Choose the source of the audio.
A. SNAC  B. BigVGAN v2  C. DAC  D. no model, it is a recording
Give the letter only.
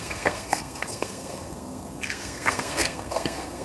A